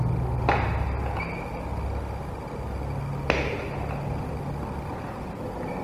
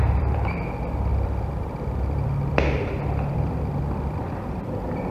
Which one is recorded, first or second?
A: first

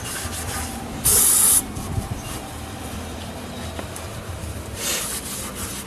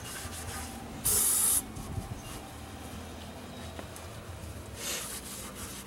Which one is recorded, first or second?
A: second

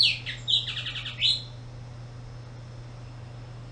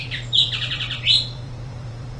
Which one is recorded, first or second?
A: first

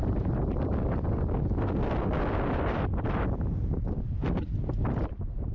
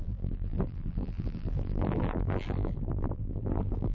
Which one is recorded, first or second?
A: first